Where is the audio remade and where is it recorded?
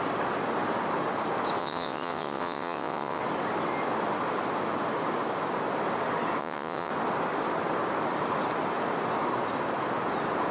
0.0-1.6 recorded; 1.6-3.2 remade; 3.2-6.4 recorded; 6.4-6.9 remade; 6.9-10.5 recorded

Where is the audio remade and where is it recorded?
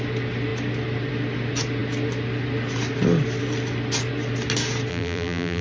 0.0-4.9 recorded; 4.9-5.6 remade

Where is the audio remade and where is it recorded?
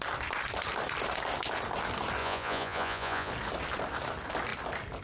0.0-2.2 recorded; 2.2-3.3 remade; 3.3-5.0 recorded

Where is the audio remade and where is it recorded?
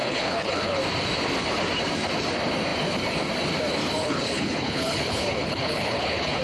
0.0-0.8 remade; 0.8-4.0 recorded; 4.0-6.4 remade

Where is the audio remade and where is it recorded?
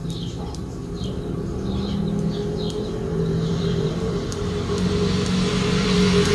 0.0-1.4 remade; 1.4-3.5 recorded; 3.5-4.5 remade; 4.5-5.5 recorded; 5.5-6.3 remade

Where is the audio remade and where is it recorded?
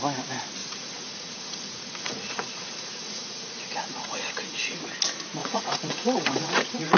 0.0-0.6 recorded; 0.6-4.8 remade; 4.8-5.4 recorded; 5.4-7.0 remade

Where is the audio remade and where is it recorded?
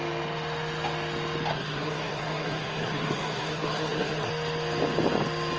0.0-1.5 recorded; 1.5-4.3 remade; 4.3-5.6 recorded